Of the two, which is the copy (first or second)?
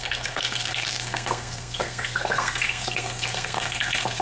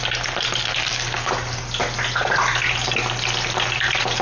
first